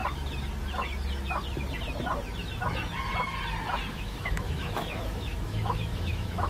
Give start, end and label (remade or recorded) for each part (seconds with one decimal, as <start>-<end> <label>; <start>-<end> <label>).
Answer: 0.0-3.9 recorded; 3.9-6.5 remade

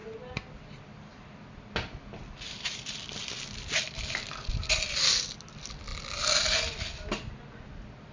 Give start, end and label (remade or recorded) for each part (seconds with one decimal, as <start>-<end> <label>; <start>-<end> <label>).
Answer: 0.0-2.2 recorded; 2.2-4.5 remade; 4.5-5.9 recorded; 5.9-6.8 remade; 6.8-8.1 recorded